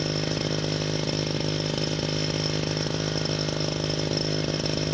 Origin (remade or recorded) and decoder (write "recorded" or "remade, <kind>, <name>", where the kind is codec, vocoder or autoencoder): recorded